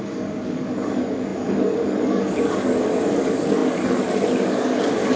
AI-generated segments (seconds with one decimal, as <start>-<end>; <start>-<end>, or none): 0.0-5.2